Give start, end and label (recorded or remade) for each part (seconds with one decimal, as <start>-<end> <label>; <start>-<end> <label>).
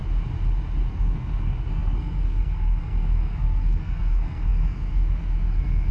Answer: 0.0-0.9 recorded; 0.9-5.9 remade